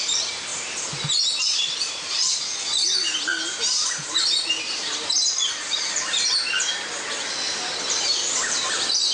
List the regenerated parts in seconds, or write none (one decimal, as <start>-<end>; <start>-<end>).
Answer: 0.0-0.5; 1.4-6.4; 8.0-9.1